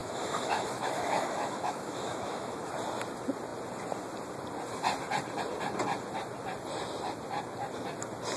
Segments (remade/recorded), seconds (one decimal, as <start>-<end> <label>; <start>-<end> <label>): 0.0-2.7 remade; 2.7-8.4 recorded